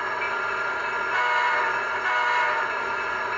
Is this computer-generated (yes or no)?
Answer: no